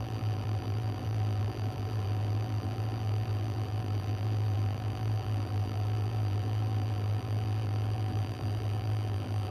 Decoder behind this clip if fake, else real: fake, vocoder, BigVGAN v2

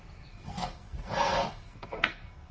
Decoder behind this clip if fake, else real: fake, codec, SNAC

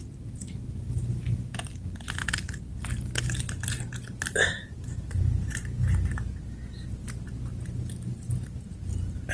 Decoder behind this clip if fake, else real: real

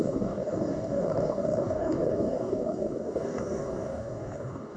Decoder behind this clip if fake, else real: fake, codec, DAC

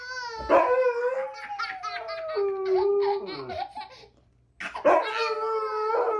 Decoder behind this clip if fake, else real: real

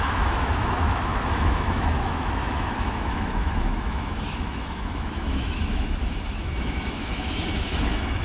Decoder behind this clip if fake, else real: fake, autoencoder, DAC-VAE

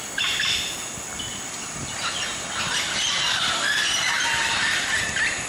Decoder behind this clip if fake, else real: real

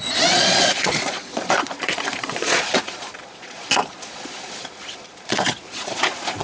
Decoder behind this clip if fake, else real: fake, vocoder, Vocos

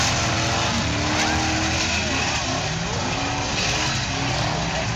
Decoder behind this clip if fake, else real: real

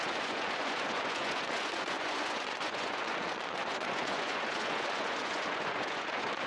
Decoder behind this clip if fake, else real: fake, vocoder, Vocos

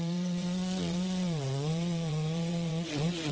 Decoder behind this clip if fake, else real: fake, vocoder, WaveNeXt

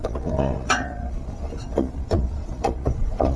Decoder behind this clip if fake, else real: fake, vocoder, Vocos